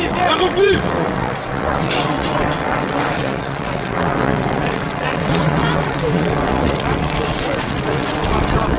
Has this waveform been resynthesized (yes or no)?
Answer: yes